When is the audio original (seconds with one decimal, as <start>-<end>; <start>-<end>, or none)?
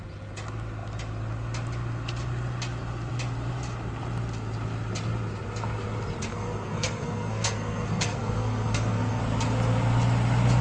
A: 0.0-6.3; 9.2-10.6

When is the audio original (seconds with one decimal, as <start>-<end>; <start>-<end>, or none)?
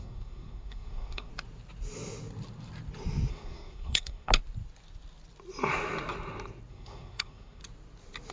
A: 1.3-3.3; 4.3-6.7; 7.6-8.3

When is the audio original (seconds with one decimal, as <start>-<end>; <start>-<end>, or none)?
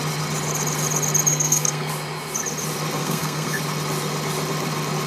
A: 0.0-1.3; 1.9-3.0; 3.6-5.1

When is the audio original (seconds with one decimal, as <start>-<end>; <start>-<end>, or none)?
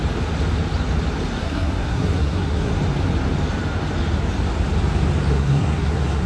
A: 0.0-1.4; 2.7-5.3